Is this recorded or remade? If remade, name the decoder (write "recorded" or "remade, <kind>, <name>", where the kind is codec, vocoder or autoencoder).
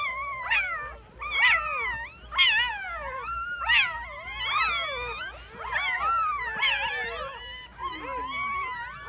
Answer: recorded